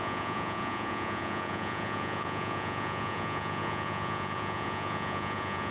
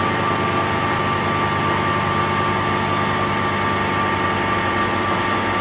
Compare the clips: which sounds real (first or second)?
second